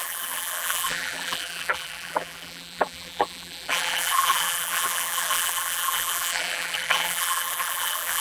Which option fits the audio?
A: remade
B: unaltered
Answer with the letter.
A